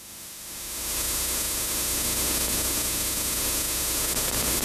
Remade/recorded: remade